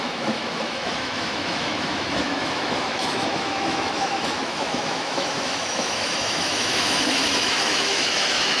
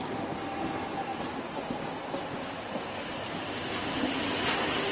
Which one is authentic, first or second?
second